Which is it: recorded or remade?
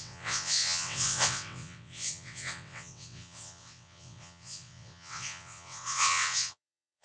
remade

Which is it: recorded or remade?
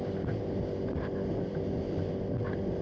recorded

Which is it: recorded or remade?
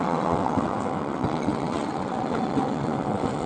remade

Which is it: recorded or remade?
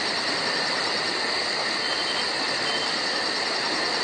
recorded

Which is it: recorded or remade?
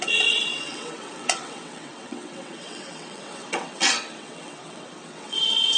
remade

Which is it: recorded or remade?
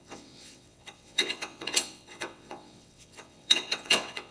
remade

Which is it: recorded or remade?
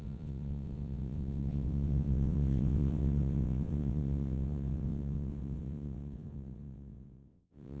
remade